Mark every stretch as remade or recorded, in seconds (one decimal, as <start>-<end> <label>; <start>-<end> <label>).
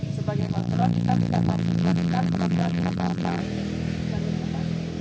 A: 0.0-0.4 recorded; 0.4-3.4 remade; 3.4-5.0 recorded